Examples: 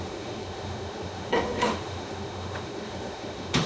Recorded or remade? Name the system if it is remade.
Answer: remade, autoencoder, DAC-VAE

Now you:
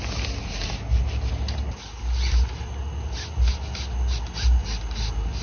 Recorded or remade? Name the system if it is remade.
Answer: recorded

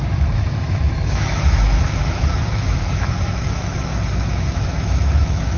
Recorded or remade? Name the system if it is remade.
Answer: remade, autoencoder, DAC-VAE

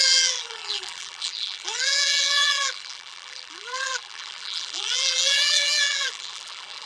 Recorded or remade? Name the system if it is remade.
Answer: remade, vocoder, BigVGAN v2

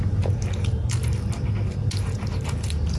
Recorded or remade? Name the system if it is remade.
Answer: recorded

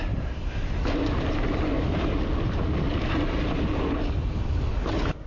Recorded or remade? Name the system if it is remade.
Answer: recorded